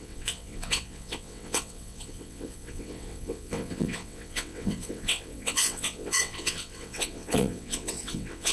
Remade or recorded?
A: remade